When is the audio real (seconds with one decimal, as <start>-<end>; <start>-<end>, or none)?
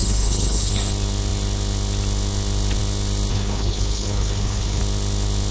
0.7-3.3; 4.8-5.5